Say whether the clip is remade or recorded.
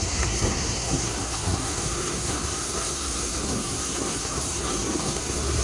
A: remade